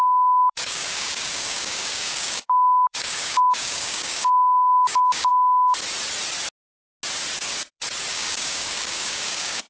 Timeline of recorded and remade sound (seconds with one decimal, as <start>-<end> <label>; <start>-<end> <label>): 0.0-5.3 remade; 5.3-8.1 recorded; 8.1-9.7 remade